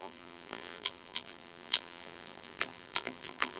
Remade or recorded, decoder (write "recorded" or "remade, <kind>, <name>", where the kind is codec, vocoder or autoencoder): remade, vocoder, BigVGAN v2